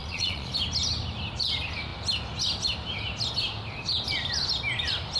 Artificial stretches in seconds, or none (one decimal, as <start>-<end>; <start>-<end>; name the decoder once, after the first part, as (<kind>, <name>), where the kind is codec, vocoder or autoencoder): 0.0-0.5 (vocoder, Vocos)